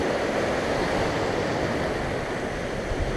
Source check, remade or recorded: recorded